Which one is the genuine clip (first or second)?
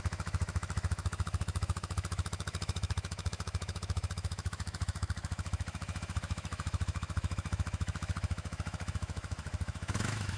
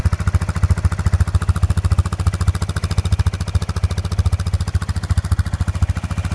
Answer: second